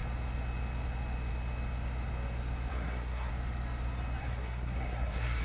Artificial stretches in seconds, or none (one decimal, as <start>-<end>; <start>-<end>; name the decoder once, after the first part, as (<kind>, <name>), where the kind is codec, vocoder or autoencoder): 2.7-3.3 (codec, SNAC); 4.2-5.4